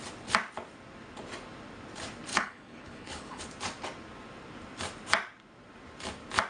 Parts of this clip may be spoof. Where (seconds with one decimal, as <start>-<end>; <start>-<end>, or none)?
2.3-3.4